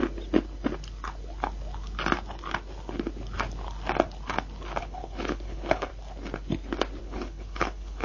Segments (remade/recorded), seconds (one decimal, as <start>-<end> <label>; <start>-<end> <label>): 0.0-4.8 recorded; 4.8-5.9 remade; 5.9-7.0 recorded; 7.0-8.0 remade